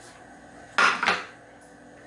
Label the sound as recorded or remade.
recorded